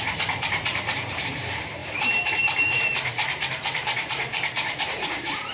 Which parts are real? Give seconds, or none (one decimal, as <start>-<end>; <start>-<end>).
none